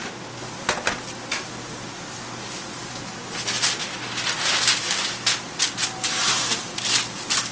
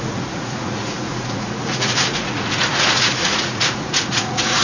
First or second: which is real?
first